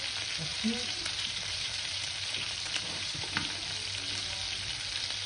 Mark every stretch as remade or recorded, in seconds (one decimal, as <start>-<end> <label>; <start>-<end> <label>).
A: 0.0-0.5 recorded; 0.5-3.5 remade; 3.5-5.3 recorded